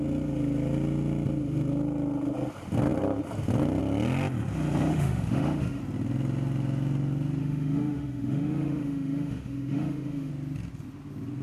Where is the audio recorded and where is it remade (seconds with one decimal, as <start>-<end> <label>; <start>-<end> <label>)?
0.0-4.9 recorded; 4.9-5.8 remade; 5.8-7.4 recorded; 7.4-10.3 remade; 10.3-11.4 recorded